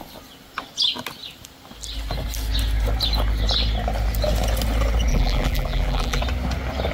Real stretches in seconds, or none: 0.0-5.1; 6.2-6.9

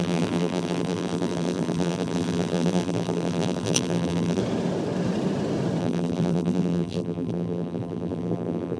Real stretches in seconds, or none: 4.4-5.8

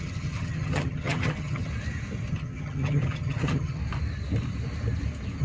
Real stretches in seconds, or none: 1.7-2.3; 3.8-5.4

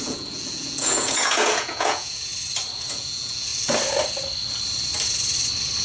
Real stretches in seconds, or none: 2.3-2.9; 3.5-5.8

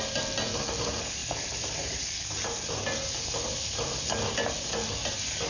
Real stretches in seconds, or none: 0.0-5.5

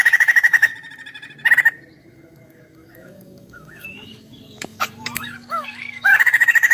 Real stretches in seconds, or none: 0.7-2.0

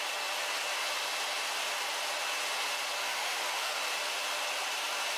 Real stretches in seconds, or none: 0.0-3.0; 3.8-5.2